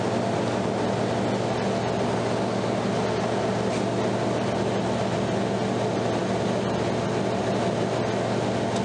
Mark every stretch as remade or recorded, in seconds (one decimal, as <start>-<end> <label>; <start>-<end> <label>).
0.0-8.8 recorded